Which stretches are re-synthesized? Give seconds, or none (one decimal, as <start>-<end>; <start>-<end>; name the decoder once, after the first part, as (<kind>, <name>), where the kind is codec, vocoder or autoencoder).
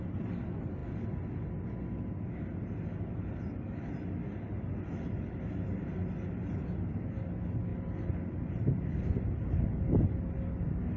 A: none